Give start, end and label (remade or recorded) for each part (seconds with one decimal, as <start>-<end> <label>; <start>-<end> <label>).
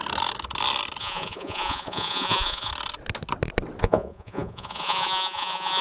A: 0.0-1.0 recorded; 1.0-2.7 remade; 2.7-3.8 recorded; 3.8-5.8 remade